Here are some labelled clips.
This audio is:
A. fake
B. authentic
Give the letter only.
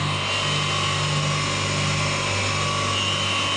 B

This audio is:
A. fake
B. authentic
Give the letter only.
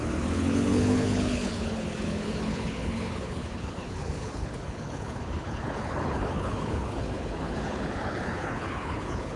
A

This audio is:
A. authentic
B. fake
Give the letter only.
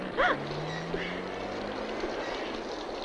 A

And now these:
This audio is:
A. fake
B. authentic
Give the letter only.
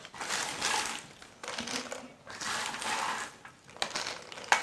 B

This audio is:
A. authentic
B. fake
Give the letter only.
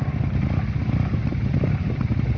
A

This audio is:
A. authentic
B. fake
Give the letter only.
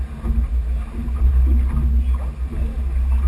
A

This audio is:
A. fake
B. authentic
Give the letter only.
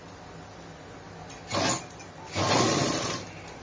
B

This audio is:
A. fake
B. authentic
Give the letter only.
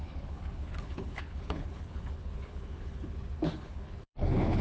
A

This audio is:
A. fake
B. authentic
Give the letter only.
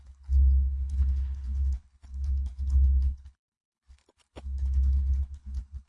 A